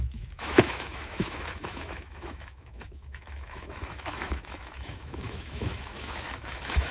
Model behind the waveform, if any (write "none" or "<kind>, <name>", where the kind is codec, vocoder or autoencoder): autoencoder, DAC-VAE